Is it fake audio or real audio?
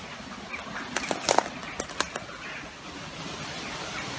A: real